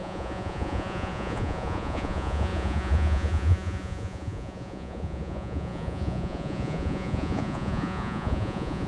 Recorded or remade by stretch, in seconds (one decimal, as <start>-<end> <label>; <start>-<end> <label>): 0.0-8.9 remade